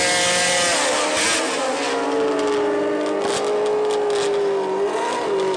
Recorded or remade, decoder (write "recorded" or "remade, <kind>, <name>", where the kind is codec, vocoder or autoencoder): recorded